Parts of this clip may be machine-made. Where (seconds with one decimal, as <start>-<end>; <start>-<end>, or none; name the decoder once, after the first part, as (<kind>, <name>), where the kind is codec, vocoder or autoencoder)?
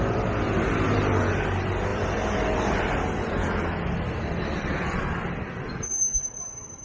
none